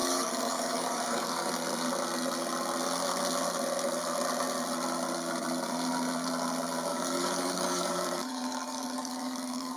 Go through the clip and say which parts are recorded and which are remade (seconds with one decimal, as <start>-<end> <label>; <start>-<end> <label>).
0.0-1.5 remade; 1.5-6.9 recorded; 6.9-9.8 remade